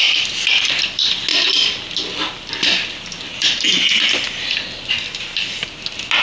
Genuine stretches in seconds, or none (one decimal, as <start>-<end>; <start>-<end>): 0.0-6.2